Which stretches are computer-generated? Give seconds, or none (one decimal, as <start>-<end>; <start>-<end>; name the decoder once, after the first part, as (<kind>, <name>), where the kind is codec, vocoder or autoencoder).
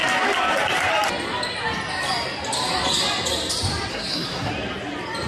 3.9-4.5 (codec, SNAC)